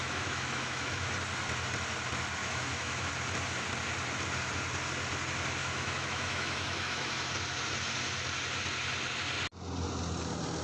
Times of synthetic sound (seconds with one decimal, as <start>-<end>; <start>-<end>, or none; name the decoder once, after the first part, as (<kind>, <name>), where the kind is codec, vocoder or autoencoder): 0.0-1.1 (autoencoder, DAC-VAE); 2.4-3.1; 5.6-7.1